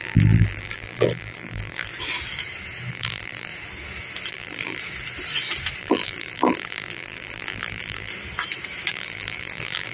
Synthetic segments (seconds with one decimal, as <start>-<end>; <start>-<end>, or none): 0.0-1.9; 2.9-3.5; 4.3-4.8; 5.8-8.1; 8.9-9.9